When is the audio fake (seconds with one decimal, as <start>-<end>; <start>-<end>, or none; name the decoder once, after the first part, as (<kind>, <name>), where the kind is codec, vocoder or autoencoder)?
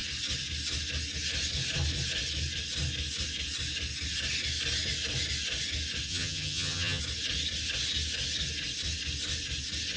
6.1-7.0 (vocoder, HiFi-GAN)